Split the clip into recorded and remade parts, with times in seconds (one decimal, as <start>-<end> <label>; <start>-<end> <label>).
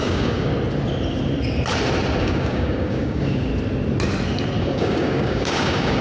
0.0-0.5 remade; 0.5-2.2 recorded; 2.2-3.5 remade; 3.5-4.6 recorded; 4.6-6.0 remade